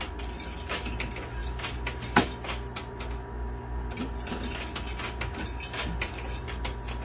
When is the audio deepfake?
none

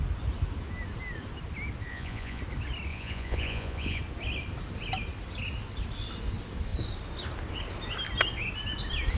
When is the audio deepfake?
1.9-2.4 (vocoder, Vocos); 2.9-4.0

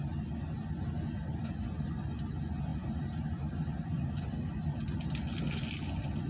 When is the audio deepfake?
2.7-4.1 (vocoder, BigVGAN v2)

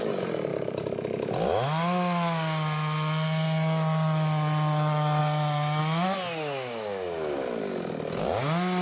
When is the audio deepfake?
0.5-1.3 (vocoder, BigVGAN v2)

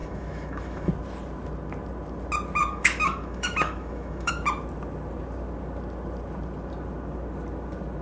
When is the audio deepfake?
0.0-0.9 (autoencoder, DAC-VAE); 2.6-4.3